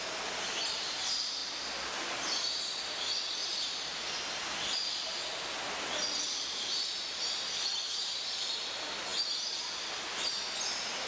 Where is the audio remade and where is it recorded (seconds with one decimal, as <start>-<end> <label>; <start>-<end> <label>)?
0.0-1.4 recorded; 1.4-2.5 remade; 2.5-9.1 recorded; 9.1-10.0 remade; 10.0-11.1 recorded